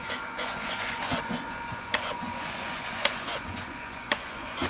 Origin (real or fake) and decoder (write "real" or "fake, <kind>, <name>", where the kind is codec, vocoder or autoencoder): fake, vocoder, Vocos